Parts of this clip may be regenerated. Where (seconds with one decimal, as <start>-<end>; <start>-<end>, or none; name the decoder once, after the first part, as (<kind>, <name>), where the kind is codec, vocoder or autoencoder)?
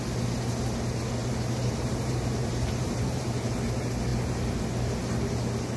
1.2-3.3 (vocoder, BigVGAN v2)